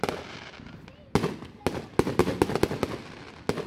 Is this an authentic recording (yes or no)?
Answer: yes